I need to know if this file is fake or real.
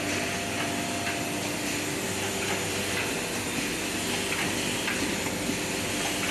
real